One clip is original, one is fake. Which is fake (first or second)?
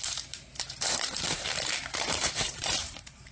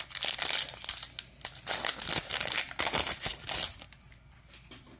first